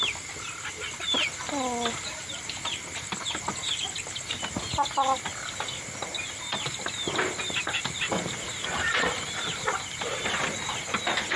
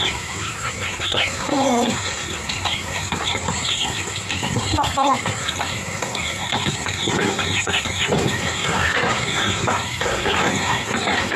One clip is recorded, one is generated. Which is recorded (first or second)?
first